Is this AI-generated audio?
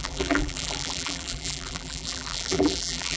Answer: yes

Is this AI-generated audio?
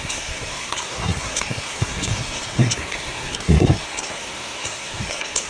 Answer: yes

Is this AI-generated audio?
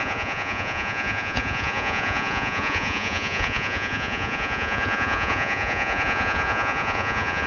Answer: yes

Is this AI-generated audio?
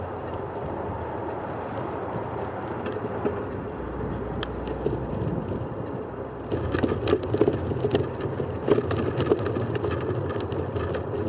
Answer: no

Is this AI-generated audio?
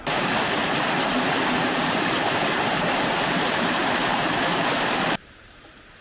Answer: yes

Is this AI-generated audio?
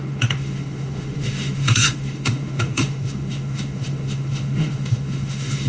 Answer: yes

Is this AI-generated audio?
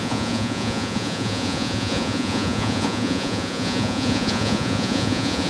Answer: yes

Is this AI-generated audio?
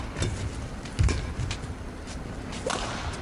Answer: no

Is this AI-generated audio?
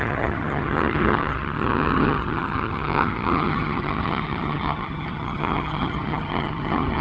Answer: yes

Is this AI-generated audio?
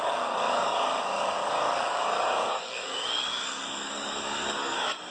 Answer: yes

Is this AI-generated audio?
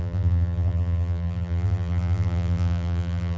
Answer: yes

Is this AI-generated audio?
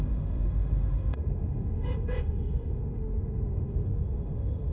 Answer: yes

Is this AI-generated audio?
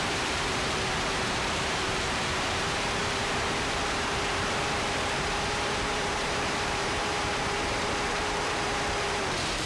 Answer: yes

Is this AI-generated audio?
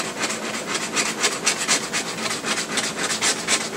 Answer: no